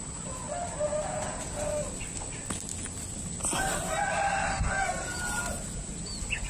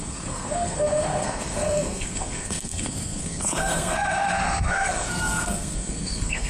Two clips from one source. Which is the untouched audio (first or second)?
first